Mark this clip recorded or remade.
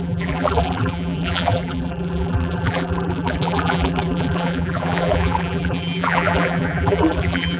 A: remade